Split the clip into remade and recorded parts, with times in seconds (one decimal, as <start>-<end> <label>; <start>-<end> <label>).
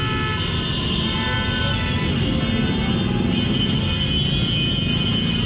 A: 0.0-1.7 recorded; 1.7-2.4 remade; 2.4-5.5 recorded